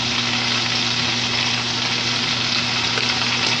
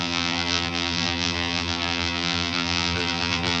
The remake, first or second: second